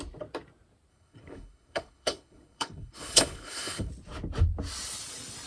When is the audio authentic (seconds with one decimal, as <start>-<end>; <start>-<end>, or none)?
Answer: 0.0-0.9; 3.9-5.5